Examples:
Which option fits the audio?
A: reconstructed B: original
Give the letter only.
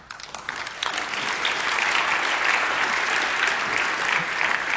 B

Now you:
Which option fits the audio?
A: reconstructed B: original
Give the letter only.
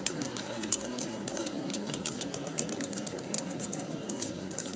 A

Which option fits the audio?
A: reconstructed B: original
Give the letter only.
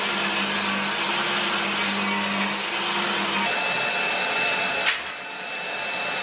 B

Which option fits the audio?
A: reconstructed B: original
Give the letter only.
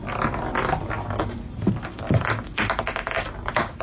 B